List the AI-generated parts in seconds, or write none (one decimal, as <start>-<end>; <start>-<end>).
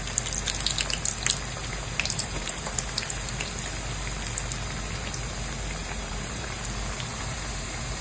1.6-3.3; 5.8-6.6; 7.1-8.0